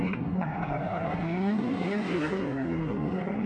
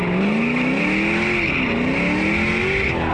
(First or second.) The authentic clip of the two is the second